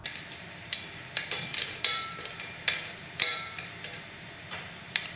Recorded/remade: remade